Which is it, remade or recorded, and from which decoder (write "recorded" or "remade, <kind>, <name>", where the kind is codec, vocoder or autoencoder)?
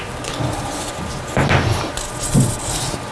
recorded